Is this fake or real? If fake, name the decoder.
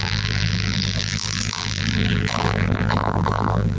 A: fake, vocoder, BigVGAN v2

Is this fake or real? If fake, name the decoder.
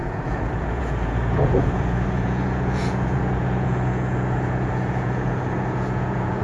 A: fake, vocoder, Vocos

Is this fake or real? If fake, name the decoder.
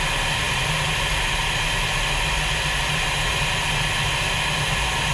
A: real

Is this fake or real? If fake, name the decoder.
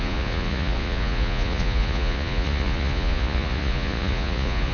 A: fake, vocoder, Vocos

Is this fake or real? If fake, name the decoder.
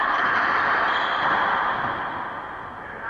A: real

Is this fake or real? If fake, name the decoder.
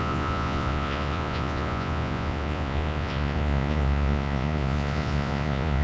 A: fake, vocoder, Vocos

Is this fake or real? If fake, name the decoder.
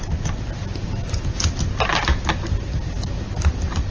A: real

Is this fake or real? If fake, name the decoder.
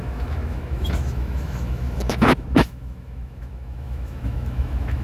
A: fake, autoencoder, DAC-VAE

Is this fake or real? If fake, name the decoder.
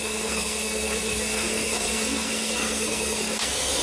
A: fake, codec, SNAC